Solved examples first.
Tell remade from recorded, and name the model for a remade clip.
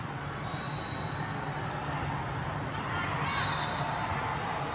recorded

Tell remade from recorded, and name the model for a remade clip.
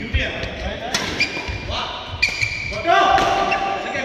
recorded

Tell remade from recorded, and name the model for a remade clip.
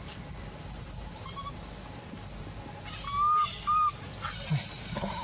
recorded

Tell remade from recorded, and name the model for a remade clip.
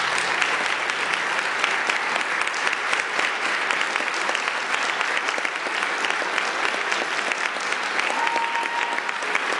recorded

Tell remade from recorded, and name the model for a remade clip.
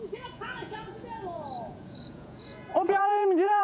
remade, vocoder, Vocos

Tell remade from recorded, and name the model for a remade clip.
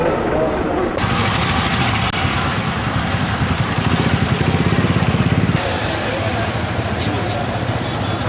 recorded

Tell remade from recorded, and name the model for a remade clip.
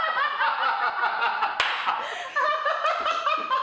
recorded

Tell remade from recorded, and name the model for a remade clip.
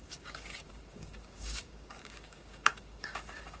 remade, codec, DAC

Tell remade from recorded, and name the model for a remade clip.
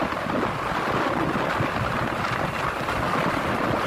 recorded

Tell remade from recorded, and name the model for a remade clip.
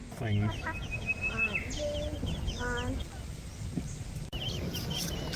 recorded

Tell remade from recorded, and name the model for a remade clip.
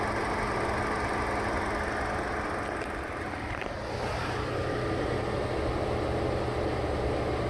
recorded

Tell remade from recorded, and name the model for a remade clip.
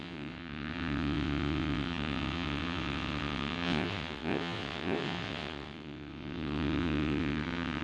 remade, vocoder, WaveNeXt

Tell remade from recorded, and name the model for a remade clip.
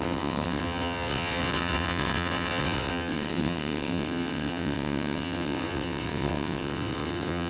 remade, vocoder, WaveNeXt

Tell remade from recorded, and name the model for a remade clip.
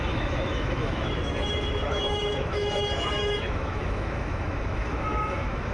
remade, autoencoder, DAC-VAE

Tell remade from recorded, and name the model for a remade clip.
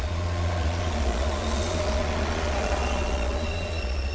remade, vocoder, Vocos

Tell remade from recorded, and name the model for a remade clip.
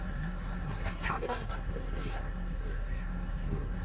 remade, codec, SNAC